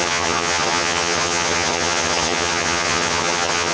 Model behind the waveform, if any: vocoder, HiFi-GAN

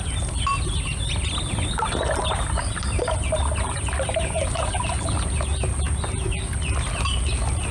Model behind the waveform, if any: none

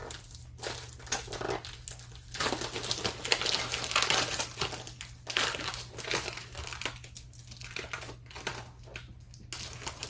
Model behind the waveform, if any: none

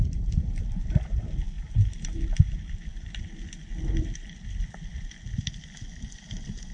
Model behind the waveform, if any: none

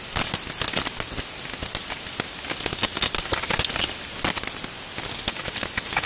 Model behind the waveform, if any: none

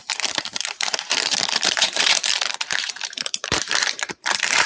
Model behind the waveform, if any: vocoder, BigVGAN v2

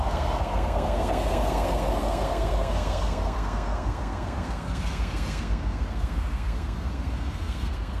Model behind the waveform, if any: codec, SNAC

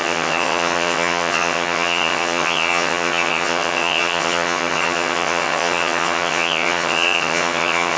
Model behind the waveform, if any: vocoder, HiFi-GAN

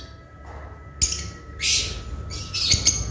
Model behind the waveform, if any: none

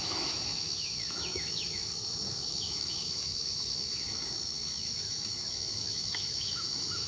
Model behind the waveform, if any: autoencoder, DAC-VAE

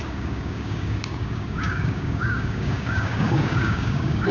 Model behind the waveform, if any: codec, DAC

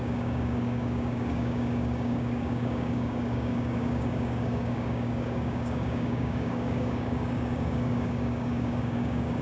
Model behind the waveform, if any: codec, DAC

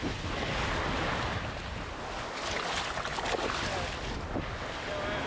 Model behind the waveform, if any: none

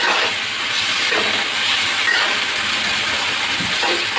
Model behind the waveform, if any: vocoder, BigVGAN v2